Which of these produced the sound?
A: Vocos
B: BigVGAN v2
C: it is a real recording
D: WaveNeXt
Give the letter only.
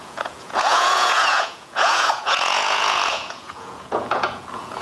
A